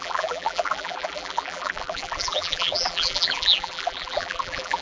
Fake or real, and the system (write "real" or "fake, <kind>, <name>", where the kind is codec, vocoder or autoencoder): fake, vocoder, BigVGAN v2